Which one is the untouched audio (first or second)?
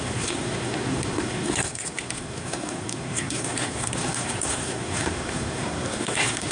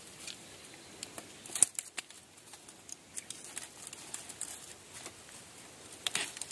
second